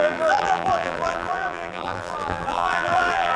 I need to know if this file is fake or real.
fake